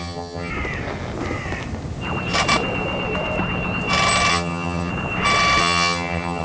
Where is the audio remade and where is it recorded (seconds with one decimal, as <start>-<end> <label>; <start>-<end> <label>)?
0.0-0.5 remade; 0.5-4.3 recorded; 4.3-4.9 remade; 4.9-5.6 recorded; 5.6-6.4 remade